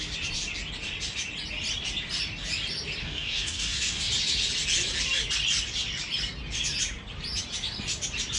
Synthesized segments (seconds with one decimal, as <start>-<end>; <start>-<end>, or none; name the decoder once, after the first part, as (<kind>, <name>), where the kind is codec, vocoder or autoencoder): 3.0-4.1 (codec, DAC)